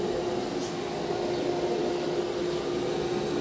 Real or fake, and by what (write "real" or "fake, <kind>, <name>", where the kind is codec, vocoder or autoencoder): real